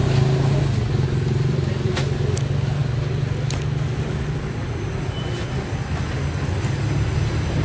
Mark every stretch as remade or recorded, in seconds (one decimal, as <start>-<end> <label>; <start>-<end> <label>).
0.0-7.6 recorded